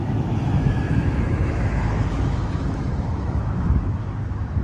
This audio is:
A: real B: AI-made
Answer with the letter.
B